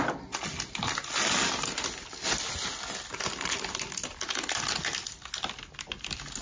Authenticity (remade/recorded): recorded